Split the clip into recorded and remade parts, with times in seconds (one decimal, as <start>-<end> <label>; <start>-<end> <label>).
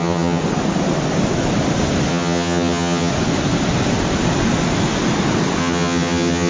0.0-0.4 remade; 0.4-2.1 recorded; 2.1-3.1 remade; 3.1-5.6 recorded; 5.6-6.5 remade